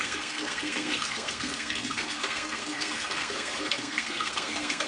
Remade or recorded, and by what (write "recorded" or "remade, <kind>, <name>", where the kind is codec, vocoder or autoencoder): remade, codec, SNAC